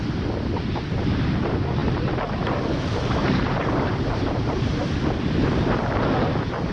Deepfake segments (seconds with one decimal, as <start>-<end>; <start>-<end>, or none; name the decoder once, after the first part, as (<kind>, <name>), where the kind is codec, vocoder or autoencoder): 3.2-4.9 (vocoder, BigVGAN v2)